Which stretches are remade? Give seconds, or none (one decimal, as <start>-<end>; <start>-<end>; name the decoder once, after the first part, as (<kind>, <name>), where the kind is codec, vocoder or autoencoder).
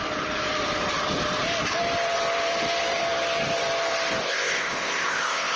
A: 4.2-5.6 (codec, ZipCodec)